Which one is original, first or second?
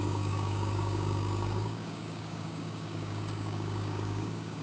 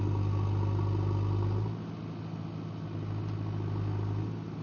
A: second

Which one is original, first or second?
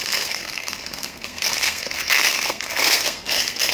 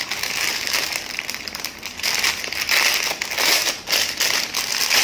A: second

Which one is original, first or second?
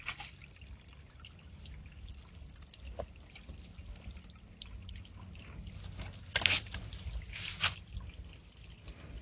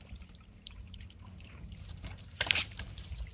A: first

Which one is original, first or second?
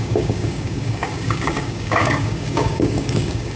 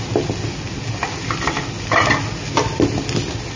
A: second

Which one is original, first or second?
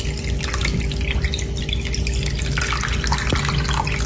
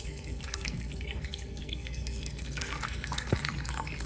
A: first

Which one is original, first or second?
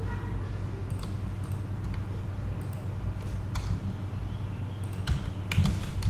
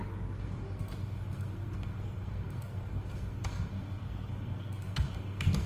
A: first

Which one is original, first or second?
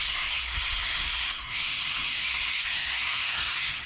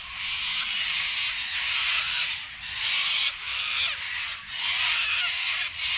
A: second